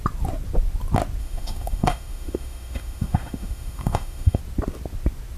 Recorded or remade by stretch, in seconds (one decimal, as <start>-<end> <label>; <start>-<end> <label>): 0.0-1.2 recorded; 1.2-4.4 remade; 4.4-5.4 recorded